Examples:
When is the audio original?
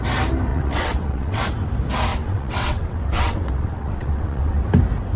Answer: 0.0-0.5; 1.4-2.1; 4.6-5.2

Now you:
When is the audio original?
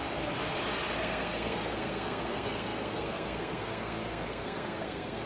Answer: 0.0-1.0